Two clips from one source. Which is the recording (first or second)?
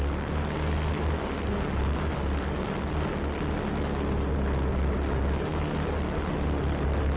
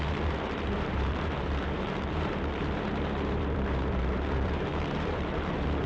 first